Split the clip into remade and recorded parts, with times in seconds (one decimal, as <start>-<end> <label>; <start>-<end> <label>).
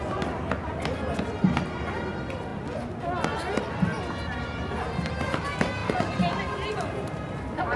0.0-5.8 recorded; 5.8-7.8 remade